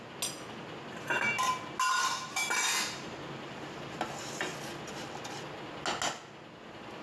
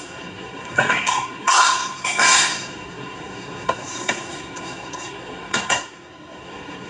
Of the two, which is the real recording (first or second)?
first